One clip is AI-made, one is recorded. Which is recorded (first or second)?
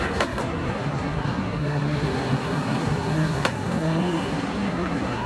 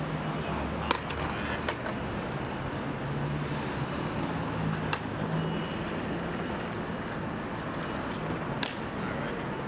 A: second